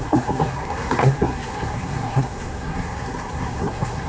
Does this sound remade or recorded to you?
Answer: remade